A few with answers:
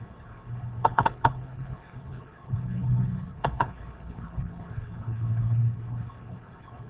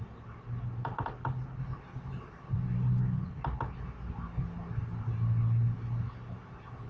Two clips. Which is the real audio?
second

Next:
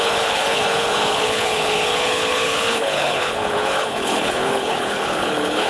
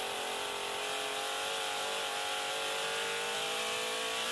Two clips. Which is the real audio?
second